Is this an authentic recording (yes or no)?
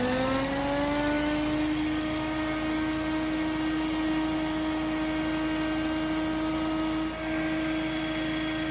yes